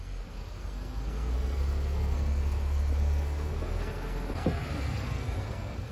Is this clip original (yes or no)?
no